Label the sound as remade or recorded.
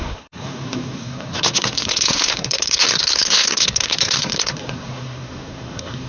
remade